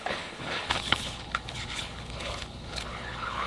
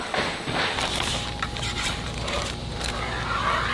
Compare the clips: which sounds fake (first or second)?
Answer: first